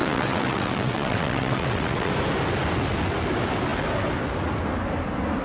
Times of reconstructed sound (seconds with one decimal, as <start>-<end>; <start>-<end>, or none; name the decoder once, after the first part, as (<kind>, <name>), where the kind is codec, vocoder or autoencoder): 0.0-2.1 (vocoder, WaveNeXt)

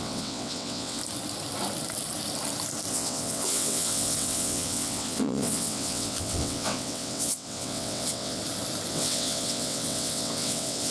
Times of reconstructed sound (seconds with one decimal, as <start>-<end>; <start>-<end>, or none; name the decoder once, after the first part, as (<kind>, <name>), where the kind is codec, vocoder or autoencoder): 0.0-1.0 (vocoder, WaveNeXt); 2.9-8.4; 8.9-10.9

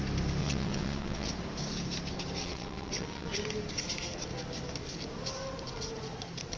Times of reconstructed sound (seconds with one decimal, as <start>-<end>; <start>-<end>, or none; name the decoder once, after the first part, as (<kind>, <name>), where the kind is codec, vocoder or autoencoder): 0.4-1.3 (vocoder, WaveNeXt); 2.4-3.3